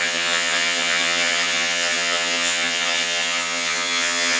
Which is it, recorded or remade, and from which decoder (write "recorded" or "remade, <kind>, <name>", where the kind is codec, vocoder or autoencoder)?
remade, vocoder, HiFi-GAN